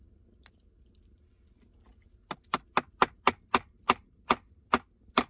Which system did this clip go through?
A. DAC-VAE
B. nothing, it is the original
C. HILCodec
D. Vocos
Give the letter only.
B